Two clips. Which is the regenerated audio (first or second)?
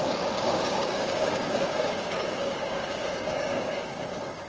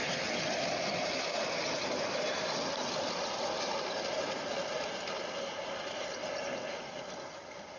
first